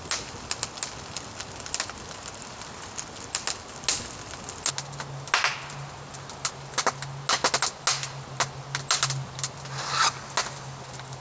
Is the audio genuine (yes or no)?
yes